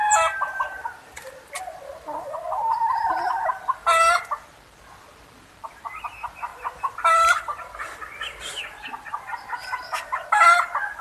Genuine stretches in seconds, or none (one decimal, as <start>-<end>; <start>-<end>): 0.0-11.0